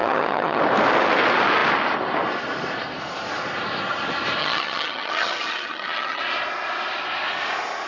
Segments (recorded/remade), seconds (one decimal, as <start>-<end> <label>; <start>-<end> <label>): 0.0-0.6 remade; 0.6-4.4 recorded; 4.4-6.2 remade; 6.2-7.9 recorded